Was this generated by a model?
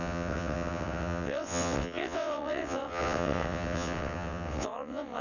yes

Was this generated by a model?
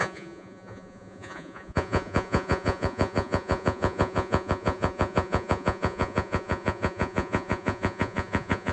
yes